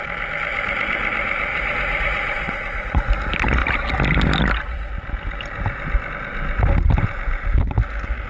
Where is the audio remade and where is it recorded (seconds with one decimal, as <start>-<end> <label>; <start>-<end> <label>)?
0.0-1.5 recorded; 1.5-3.0 remade; 3.0-8.3 recorded